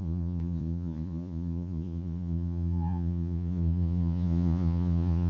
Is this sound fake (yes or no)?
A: yes